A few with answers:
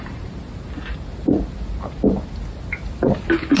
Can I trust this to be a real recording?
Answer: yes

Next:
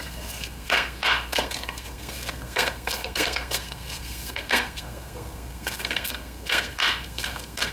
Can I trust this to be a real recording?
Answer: no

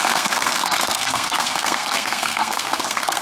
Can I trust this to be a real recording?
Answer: no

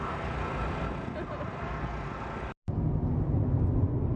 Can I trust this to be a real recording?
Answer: yes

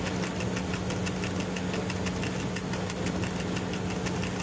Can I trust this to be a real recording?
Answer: yes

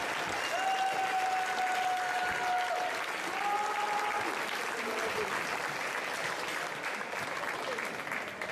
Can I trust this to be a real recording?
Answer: yes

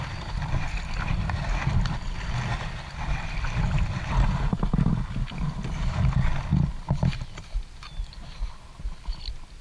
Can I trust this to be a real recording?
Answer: yes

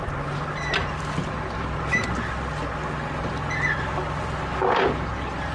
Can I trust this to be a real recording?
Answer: yes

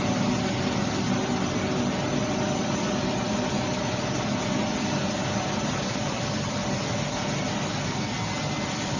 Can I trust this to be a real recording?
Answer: yes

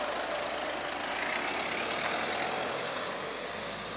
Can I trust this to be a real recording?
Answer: yes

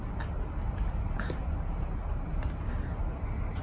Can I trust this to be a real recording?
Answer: yes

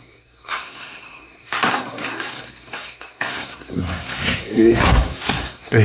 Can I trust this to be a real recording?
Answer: no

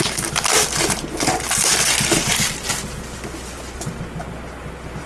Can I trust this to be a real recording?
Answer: yes